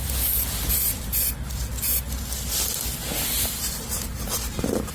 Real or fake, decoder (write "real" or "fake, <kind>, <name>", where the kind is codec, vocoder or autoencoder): real